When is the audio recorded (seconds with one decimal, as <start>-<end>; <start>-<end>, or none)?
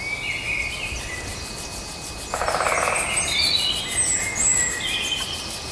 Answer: 0.0-5.7